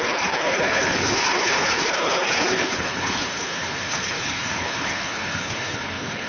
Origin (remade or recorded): remade